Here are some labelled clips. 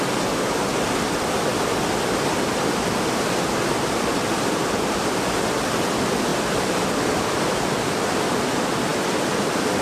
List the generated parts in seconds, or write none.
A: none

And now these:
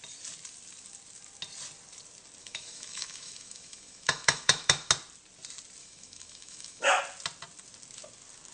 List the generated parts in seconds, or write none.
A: 2.4-4.9 (autoencoder, DAC-VAE); 5.8-7.0

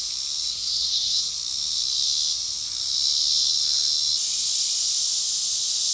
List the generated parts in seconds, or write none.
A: 0.5-1.3 (codec, SNAC)

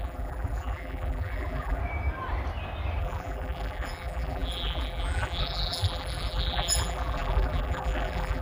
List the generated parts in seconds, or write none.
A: 0.0-1.8 (vocoder, BigVGAN v2); 3.0-8.4

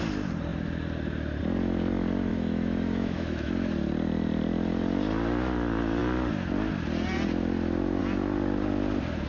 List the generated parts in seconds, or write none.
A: 2.3-3.5 (autoencoder, DAC-VAE)

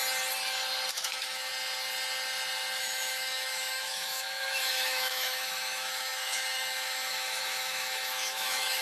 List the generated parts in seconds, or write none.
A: 0.9-1.5 (autoencoder, DAC-VAE); 2.8-8.8

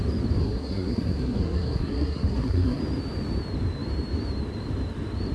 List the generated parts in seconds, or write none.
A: 0.4-2.8 (codec, SNAC)

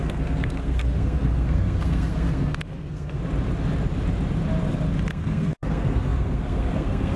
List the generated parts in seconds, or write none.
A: 0.0-3.2 (codec, SNAC); 5.1-7.2